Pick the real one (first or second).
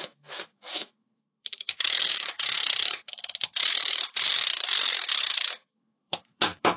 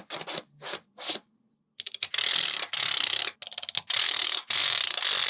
second